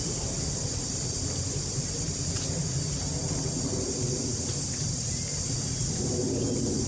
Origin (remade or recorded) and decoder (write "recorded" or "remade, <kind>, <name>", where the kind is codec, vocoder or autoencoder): recorded